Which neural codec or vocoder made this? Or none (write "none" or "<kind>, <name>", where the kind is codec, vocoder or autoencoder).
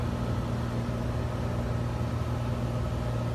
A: none